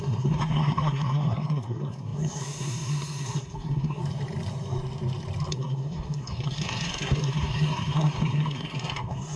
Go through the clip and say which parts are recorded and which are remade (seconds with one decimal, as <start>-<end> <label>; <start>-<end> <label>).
0.0-4.0 remade; 4.0-5.5 recorded; 5.5-9.4 remade

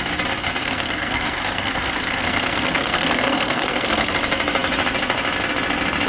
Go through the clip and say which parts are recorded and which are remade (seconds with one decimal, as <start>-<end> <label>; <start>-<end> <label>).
0.0-0.6 recorded; 0.6-4.1 remade; 4.1-6.1 recorded

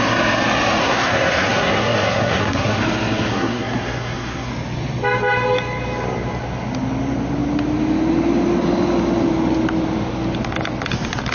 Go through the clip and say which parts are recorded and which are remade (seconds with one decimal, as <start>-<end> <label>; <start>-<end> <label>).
0.0-0.8 recorded; 0.8-2.8 remade; 2.8-3.3 recorded; 3.3-4.5 remade; 4.5-11.3 recorded

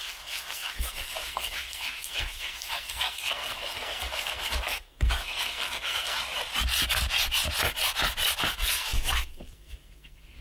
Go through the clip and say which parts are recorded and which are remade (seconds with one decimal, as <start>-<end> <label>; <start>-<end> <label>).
0.0-6.2 remade; 6.2-8.5 recorded; 8.5-10.4 remade

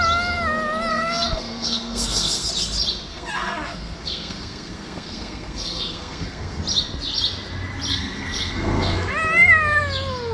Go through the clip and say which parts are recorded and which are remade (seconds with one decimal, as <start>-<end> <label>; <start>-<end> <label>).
0.0-0.9 recorded; 0.9-2.5 remade; 2.5-3.1 recorded; 3.1-6.6 remade; 6.6-7.9 recorded; 7.9-9.1 remade; 9.1-10.3 recorded

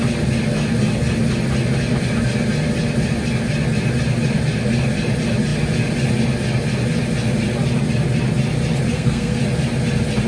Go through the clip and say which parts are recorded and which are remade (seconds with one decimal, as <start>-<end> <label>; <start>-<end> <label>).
0.0-8.9 recorded; 8.9-9.4 remade; 9.4-10.3 recorded